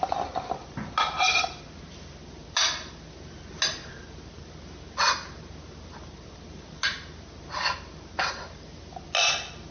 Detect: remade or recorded recorded